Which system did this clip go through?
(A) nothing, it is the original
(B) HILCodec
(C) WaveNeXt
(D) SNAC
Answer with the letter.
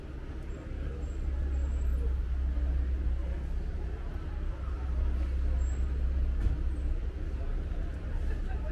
A